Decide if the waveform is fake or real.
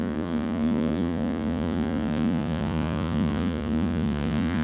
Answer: fake